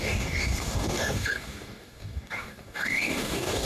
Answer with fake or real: fake